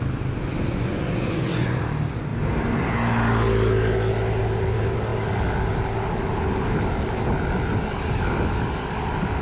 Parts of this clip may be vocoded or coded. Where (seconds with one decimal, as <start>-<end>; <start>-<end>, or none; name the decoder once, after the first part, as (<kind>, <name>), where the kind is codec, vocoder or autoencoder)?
0.7-1.8 (vocoder, Vocos)